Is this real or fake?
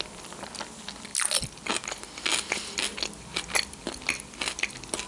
real